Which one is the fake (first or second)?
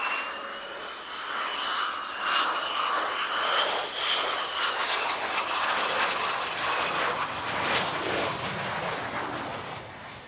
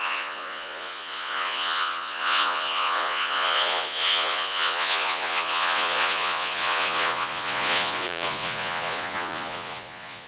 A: second